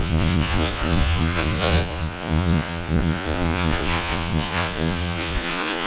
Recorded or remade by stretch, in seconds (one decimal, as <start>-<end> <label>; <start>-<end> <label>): 0.0-5.9 remade